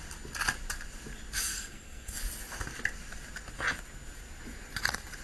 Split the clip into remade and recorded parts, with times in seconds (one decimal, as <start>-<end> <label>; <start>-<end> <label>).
0.0-1.4 recorded; 1.4-2.2 remade; 2.2-5.2 recorded